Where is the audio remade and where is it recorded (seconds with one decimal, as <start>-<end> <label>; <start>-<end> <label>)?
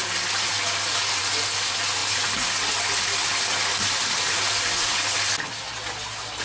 0.0-6.4 recorded